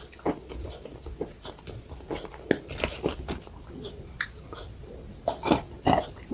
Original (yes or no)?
yes